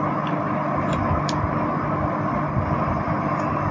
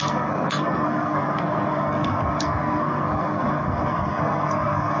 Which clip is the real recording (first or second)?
first